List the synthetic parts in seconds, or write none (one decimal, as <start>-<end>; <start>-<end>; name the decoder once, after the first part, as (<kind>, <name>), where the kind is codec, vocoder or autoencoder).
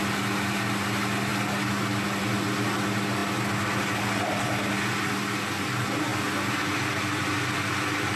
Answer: none